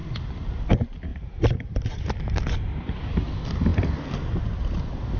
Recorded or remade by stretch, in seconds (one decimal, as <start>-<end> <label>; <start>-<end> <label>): 0.0-1.1 recorded; 1.1-2.9 remade; 2.9-5.2 recorded